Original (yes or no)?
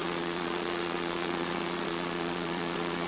no